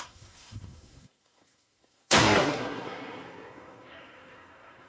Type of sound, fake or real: fake